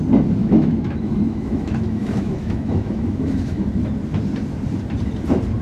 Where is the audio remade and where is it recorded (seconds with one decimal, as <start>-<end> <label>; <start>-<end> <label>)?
0.0-0.4 recorded; 0.4-3.7 remade; 3.7-5.6 recorded